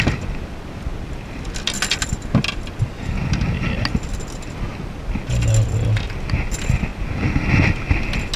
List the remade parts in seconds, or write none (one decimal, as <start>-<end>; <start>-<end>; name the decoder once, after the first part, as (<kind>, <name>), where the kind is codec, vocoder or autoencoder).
none